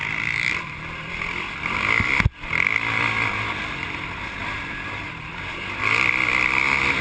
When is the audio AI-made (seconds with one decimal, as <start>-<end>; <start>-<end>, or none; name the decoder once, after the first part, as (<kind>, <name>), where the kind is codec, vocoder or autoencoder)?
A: 0.0-1.1 (vocoder, BigVGAN v2)